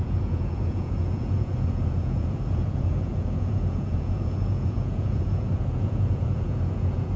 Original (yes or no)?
no